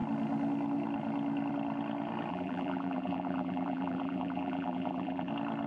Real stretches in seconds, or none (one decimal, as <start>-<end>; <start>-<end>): 0.0-2.3; 5.3-5.7